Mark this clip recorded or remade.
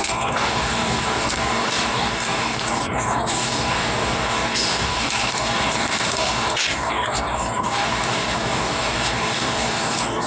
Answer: remade